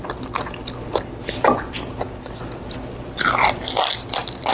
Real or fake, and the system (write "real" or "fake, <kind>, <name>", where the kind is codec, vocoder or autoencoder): real